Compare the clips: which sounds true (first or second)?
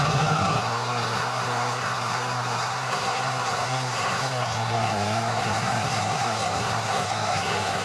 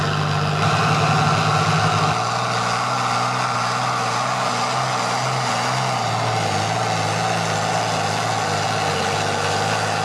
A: second